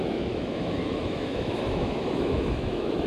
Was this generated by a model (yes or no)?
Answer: yes